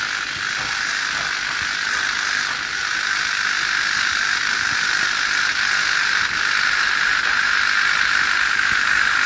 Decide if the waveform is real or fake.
real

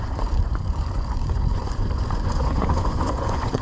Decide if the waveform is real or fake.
fake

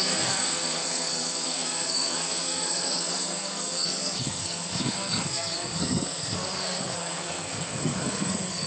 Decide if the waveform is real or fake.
fake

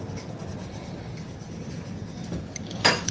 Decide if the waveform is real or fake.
real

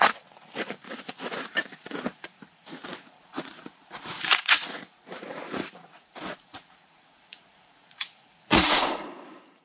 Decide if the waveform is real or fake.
fake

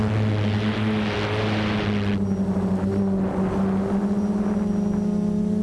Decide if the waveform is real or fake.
real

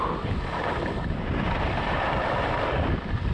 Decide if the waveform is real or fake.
real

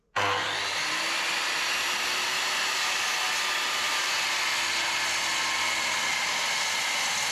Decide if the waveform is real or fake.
real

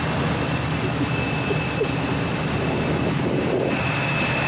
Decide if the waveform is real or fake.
real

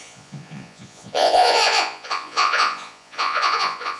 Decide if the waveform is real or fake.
fake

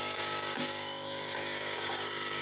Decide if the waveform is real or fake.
fake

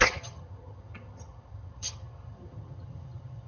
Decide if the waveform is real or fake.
fake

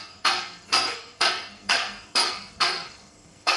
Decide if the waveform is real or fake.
fake